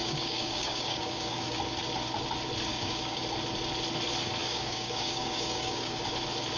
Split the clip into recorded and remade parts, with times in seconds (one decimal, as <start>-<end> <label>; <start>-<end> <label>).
0.0-1.6 remade; 1.6-2.7 recorded; 2.7-3.2 remade; 3.2-4.4 recorded; 4.4-6.0 remade; 6.0-6.6 recorded

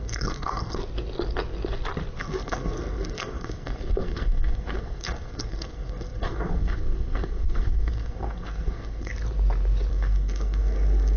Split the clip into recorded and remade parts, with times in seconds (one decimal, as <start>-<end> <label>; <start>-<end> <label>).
0.0-0.8 remade; 0.8-2.2 recorded; 2.2-9.1 remade; 9.1-9.9 recorded; 9.9-11.2 remade

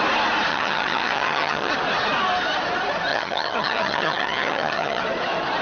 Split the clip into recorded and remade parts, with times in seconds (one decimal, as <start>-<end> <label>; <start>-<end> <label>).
0.0-0.5 recorded; 0.5-1.7 remade; 1.7-3.1 recorded; 3.1-5.0 remade; 5.0-5.6 recorded

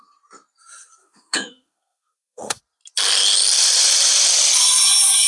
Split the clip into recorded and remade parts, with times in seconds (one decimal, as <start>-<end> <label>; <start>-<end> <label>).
0.0-1.0 recorded; 1.0-2.6 remade; 2.6-5.3 recorded